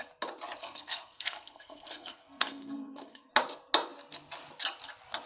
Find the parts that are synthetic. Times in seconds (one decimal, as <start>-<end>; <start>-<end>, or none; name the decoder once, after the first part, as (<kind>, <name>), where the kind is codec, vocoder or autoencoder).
0.6-3.3 (codec, SNAC)